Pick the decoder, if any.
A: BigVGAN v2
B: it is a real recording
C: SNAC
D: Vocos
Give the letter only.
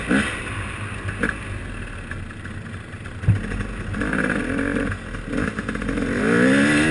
B